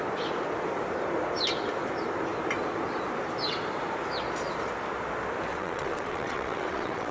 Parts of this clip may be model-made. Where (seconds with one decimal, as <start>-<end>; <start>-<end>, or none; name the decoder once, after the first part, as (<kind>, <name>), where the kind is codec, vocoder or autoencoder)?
5.5-7.1 (vocoder, WaveNeXt)